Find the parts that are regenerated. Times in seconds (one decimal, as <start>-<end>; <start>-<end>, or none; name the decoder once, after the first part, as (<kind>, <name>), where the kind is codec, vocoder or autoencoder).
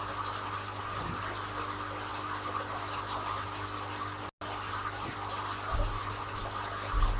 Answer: none